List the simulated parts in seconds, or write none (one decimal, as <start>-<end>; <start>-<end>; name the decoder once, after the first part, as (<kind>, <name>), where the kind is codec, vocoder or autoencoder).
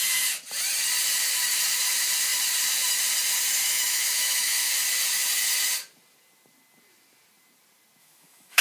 3.6-4.7 (autoencoder, DAC-VAE); 8.0-8.6